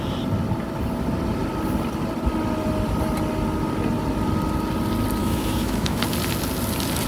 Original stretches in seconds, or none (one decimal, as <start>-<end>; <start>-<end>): 0.0-5.2; 6.0-7.1